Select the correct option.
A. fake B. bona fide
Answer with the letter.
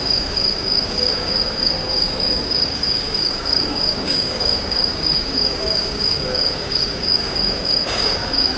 A